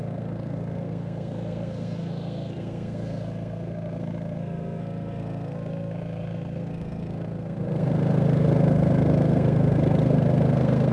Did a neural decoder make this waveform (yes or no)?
yes